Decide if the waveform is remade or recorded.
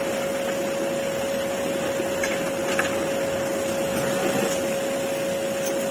recorded